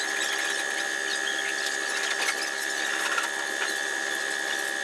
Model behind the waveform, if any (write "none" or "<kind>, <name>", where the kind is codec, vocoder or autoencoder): none